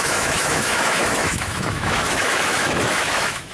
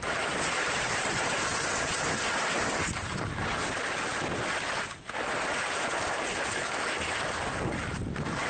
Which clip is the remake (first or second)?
first